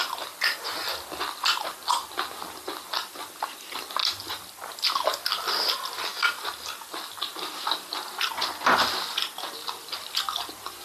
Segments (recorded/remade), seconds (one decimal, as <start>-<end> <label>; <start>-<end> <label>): 0.0-10.8 recorded